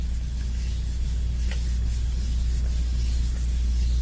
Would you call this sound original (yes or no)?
yes